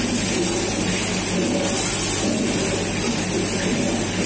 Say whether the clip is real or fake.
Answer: real